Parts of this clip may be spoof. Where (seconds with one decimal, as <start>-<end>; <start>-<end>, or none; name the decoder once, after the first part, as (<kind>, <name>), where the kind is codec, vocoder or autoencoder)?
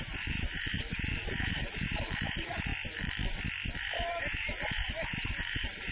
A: 0.0-2.7 (vocoder, BigVGAN v2); 3.8-5.9